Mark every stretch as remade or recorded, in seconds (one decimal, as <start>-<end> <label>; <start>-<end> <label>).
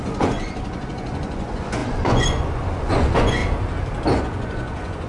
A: 0.0-3.4 remade; 3.4-4.2 recorded; 4.2-5.1 remade